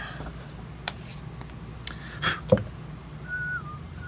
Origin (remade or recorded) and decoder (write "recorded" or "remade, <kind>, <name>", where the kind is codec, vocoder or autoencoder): recorded